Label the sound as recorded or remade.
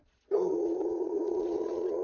remade